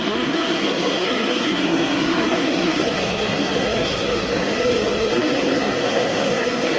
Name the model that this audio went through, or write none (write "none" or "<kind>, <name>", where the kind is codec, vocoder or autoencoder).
codec, SNAC